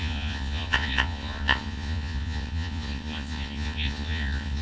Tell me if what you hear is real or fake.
fake